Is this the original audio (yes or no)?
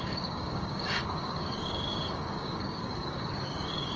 no